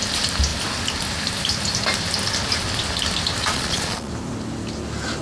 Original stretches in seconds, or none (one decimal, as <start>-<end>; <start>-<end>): 0.0-3.4; 4.1-5.2